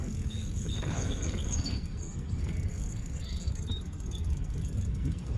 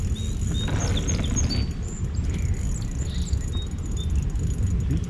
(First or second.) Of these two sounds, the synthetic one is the first